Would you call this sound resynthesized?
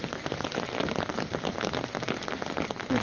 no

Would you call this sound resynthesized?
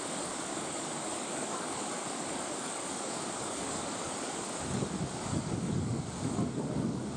yes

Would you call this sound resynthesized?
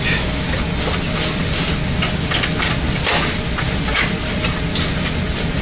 no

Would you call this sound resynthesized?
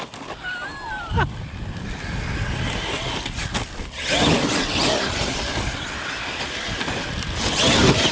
no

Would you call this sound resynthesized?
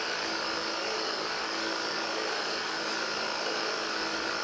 yes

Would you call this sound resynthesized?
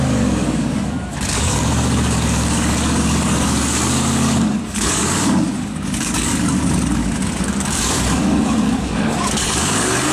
yes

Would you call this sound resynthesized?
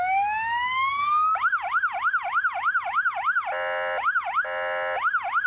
no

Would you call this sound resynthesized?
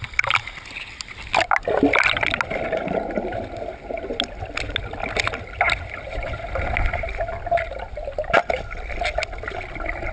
no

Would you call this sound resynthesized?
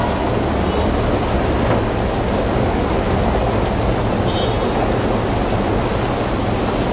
no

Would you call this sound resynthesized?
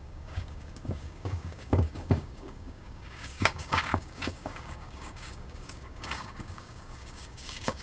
yes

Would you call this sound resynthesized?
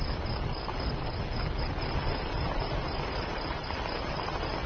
no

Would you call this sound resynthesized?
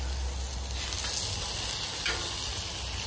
no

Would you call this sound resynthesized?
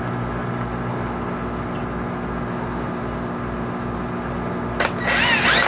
no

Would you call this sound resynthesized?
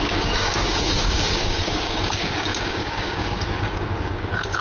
yes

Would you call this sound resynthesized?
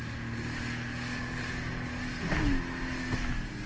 no